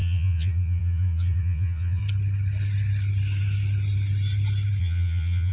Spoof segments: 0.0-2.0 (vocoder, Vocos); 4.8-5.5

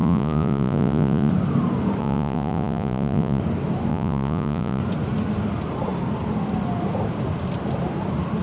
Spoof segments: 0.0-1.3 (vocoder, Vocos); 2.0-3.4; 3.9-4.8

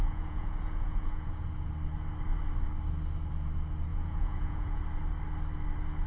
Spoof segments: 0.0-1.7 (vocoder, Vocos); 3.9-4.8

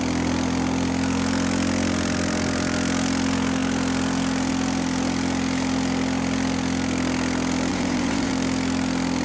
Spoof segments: 7.7-8.3 (vocoder, Vocos)